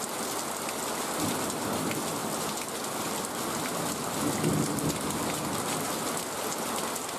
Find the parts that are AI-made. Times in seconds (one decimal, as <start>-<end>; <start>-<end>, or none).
2.2-3.2